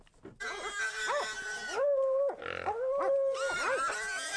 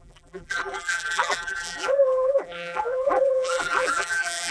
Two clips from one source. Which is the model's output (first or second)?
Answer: second